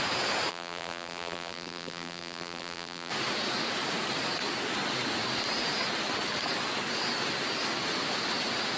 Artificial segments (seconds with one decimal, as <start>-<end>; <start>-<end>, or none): 0.5-3.1